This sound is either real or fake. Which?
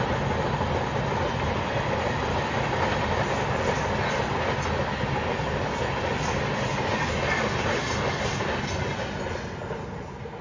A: real